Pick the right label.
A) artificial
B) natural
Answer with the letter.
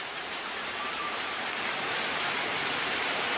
A